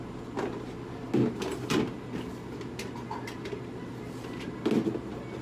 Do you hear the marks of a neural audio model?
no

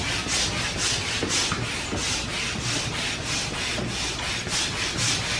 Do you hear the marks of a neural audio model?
no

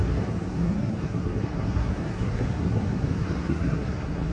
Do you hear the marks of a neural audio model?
yes